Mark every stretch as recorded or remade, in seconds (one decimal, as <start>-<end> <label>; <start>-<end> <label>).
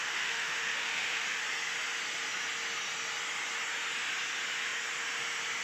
0.0-1.4 remade; 1.4-5.6 recorded